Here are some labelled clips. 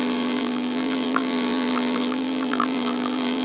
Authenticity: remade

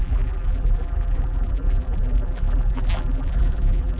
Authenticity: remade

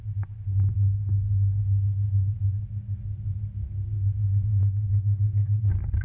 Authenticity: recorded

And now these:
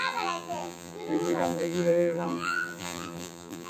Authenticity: remade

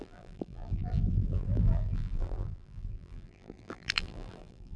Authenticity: remade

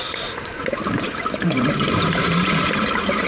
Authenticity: remade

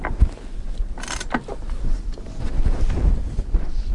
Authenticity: recorded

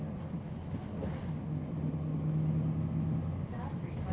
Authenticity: recorded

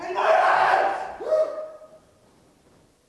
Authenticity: remade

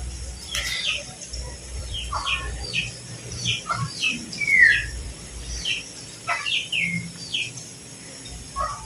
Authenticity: remade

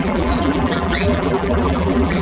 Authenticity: remade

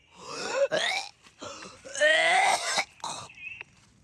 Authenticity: recorded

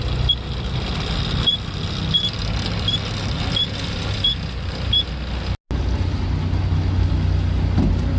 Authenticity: recorded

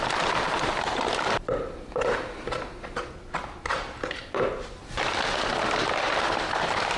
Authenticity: remade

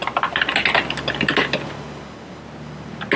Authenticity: recorded